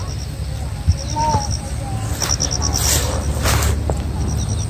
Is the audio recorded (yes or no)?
yes